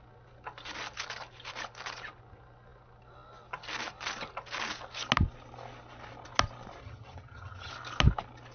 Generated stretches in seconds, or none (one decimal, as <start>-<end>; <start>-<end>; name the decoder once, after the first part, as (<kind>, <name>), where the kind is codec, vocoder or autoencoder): 6.8-7.7 (vocoder, HiFi-GAN)